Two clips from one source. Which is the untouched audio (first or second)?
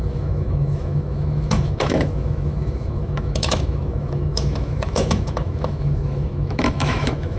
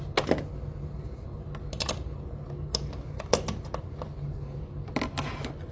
second